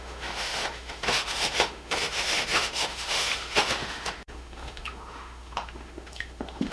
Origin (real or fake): fake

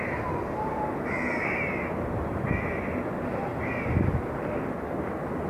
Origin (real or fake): real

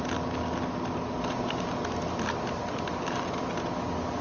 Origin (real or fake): real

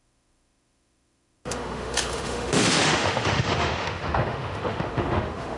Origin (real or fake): fake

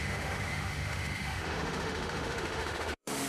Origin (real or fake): fake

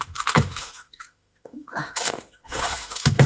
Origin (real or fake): fake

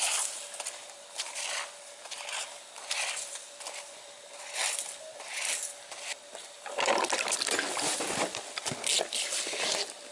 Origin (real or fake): real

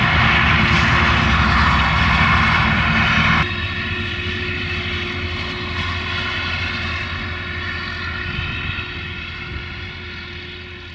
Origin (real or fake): real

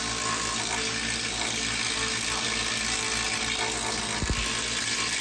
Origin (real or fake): real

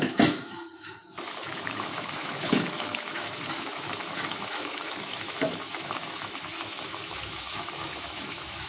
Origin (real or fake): fake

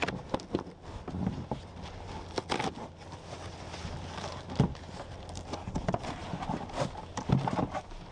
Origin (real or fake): real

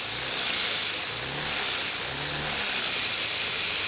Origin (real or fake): real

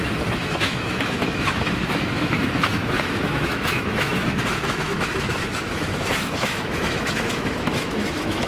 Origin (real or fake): fake